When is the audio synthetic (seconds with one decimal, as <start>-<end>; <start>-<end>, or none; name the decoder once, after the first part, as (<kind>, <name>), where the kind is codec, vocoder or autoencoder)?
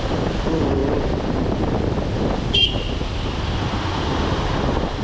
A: 0.0-0.8 (vocoder, BigVGAN v2); 2.2-2.6; 3.1-5.0